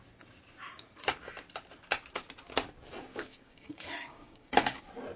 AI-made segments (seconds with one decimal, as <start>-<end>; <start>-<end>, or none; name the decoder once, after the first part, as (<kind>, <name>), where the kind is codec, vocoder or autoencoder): 3.1-4.8 (codec, DAC)